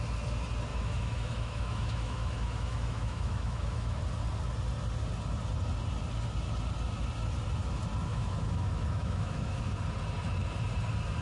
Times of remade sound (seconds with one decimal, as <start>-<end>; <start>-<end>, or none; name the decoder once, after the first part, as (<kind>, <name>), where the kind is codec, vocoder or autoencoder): 0.7-4.0 (autoencoder, DAC-VAE); 8.1-9.6